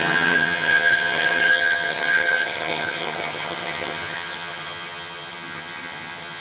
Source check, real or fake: fake